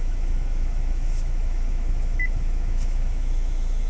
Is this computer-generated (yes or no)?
yes